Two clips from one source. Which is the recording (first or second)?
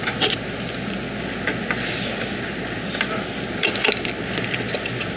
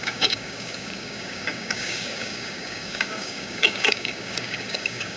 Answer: first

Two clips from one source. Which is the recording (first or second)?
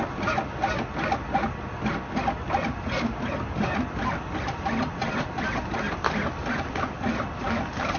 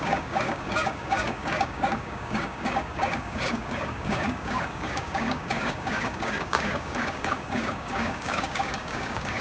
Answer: first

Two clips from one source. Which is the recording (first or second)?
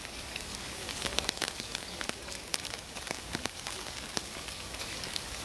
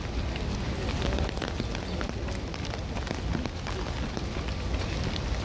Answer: second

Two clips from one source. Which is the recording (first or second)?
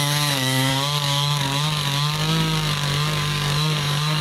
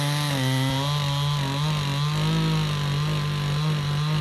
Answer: second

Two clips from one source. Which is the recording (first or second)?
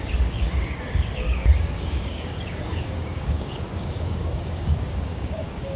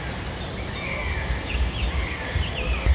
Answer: second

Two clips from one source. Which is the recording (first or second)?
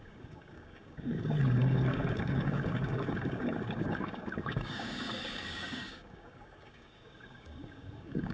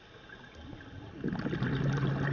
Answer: second